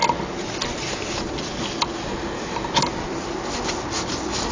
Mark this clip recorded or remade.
recorded